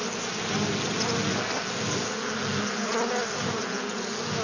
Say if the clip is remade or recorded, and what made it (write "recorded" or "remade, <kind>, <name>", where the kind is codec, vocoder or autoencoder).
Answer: recorded